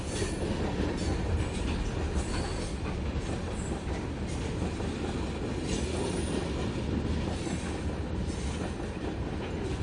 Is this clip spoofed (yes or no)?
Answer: no